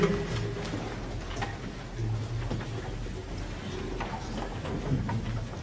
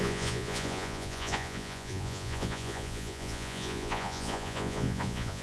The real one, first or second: first